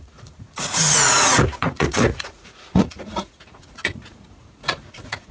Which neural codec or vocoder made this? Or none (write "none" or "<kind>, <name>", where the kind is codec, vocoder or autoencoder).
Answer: vocoder, Vocos